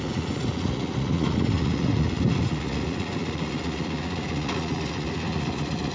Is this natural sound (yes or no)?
no